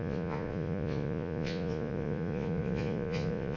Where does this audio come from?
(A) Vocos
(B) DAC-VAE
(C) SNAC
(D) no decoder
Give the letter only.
A